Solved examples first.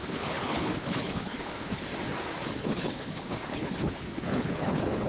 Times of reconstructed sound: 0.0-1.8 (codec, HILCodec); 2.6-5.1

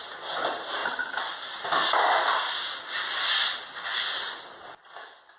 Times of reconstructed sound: none

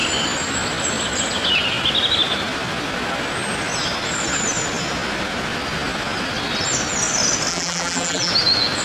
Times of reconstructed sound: 7.5-8.3 (vocoder, BigVGAN v2)

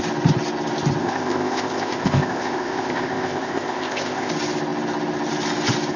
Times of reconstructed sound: 1.0-4.3 (codec, ZipCodec)

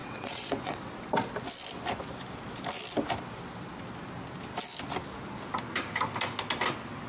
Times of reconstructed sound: 0.0-0.9 (vocoder, WaveNeXt)

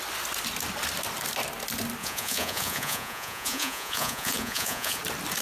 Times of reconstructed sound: 2.0-5.0 (vocoder, Vocos)

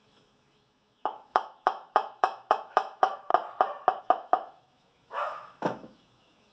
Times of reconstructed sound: 0.0-3.3 (autoencoder, DAC-VAE); 4.0-6.5